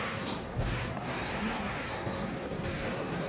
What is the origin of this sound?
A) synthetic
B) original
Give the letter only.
A